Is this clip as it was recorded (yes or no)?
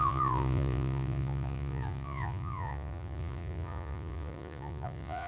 no